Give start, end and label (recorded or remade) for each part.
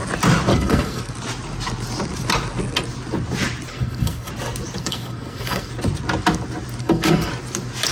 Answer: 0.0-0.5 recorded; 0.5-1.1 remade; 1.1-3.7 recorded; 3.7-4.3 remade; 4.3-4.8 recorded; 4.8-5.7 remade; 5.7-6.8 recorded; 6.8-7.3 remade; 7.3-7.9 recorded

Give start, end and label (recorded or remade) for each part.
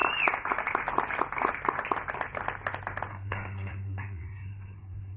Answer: 0.0-3.1 recorded; 3.1-5.2 remade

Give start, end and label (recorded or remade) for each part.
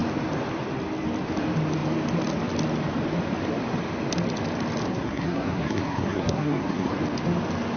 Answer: 0.0-4.9 recorded; 4.9-6.9 remade; 6.9-7.8 recorded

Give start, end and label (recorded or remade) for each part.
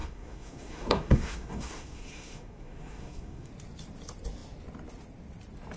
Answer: 0.0-3.5 remade; 3.5-5.8 recorded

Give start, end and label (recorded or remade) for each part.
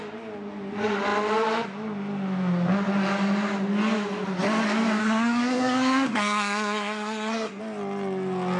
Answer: 0.0-5.0 recorded; 5.0-7.6 remade; 7.6-8.6 recorded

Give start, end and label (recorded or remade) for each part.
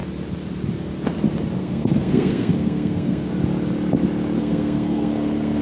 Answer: 0.0-1.6 recorded; 1.6-3.3 remade; 3.3-4.4 recorded; 4.4-5.6 remade